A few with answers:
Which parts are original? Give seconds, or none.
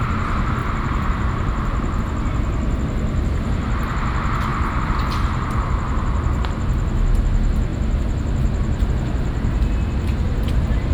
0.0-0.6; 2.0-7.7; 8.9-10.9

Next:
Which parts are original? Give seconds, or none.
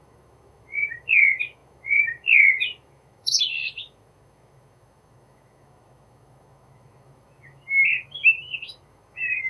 none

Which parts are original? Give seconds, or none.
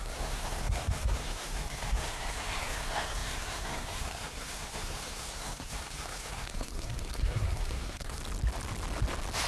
8.2-9.5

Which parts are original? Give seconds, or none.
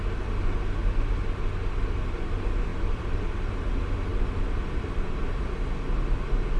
0.0-0.8; 2.3-2.7; 3.5-6.6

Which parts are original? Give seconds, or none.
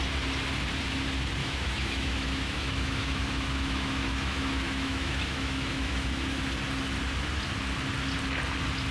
0.0-1.4; 6.4-8.9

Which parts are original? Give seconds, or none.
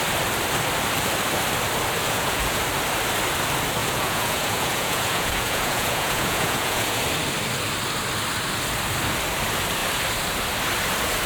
0.0-2.0; 2.6-3.8; 7.0-11.3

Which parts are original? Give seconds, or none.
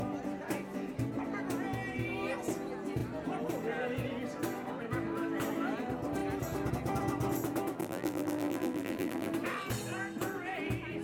0.0-7.8; 9.3-11.0